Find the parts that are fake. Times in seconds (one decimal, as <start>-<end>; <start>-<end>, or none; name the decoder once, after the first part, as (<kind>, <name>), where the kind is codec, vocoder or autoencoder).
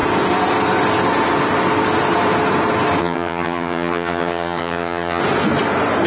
3.0-5.2 (vocoder, HiFi-GAN)